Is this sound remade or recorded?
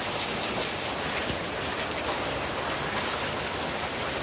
recorded